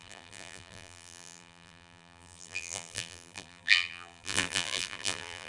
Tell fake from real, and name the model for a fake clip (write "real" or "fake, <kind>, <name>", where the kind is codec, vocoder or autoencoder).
fake, vocoder, BigVGAN v2